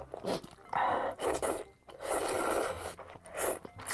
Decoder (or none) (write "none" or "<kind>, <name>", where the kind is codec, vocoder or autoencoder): none